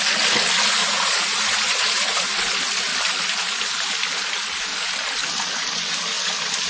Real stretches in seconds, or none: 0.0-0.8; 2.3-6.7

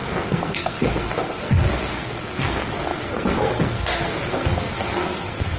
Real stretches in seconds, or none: none

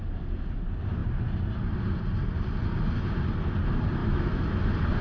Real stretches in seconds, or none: 0.0-4.0; 4.6-5.0

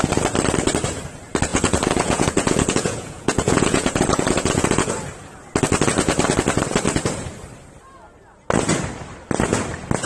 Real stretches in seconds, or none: 0.0-1.5; 4.9-10.1

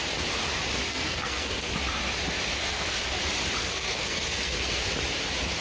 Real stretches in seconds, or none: 0.0-0.9; 1.7-2.5; 3.2-3.6; 4.8-5.6